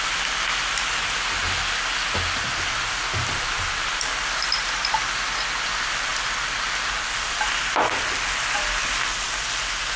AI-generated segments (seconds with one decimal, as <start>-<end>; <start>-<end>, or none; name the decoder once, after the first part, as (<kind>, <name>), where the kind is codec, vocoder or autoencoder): none